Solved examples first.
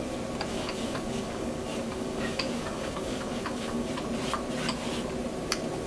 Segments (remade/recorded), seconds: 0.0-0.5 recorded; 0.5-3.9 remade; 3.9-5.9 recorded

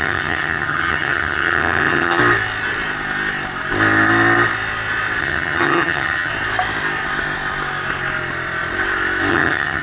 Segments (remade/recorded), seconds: 0.0-2.2 remade; 2.2-5.2 recorded; 5.2-6.3 remade; 6.3-9.3 recorded; 9.3-9.8 remade

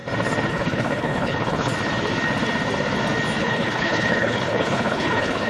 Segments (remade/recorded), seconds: 0.0-0.5 recorded; 0.5-1.7 remade; 1.7-3.4 recorded; 3.4-5.5 remade

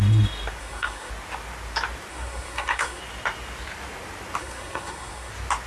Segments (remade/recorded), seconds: 0.0-0.6 recorded; 0.6-1.1 remade; 1.1-2.1 recorded; 2.1-3.0 remade; 3.0-4.4 recorded; 4.4-5.3 remade; 5.3-5.7 recorded

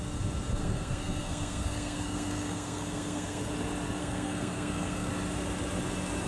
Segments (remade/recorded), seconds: 0.0-0.6 recorded; 0.6-3.5 remade; 3.5-4.0 recorded; 4.0-5.1 remade; 5.1-6.3 recorded

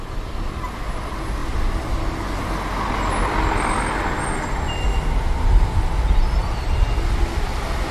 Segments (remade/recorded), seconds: 0.0-7.9 recorded